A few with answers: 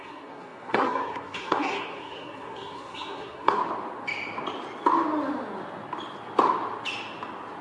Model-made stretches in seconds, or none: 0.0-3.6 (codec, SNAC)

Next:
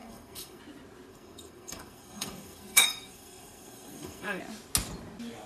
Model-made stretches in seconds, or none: 0.0-0.6 (codec, SNAC); 1.1-4.4

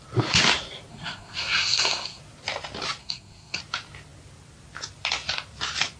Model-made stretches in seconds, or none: 0.9-2.2 (codec, SNAC); 3.0-3.6

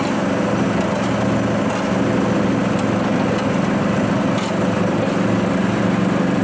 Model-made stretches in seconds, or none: none

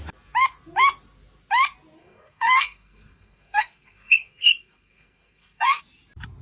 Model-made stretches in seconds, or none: 2.0-5.8 (codec, SNAC)

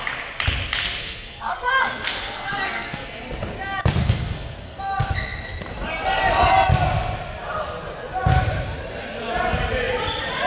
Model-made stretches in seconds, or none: 1.0-3.2 (codec, SNAC); 4.0-4.8

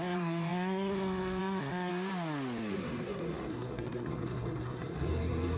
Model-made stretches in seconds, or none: 0.0-1.9 (codec, SNAC); 2.7-5.6

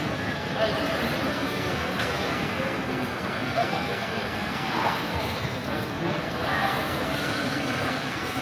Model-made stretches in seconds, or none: 0.0-0.5 (codec, SNAC); 1.3-8.4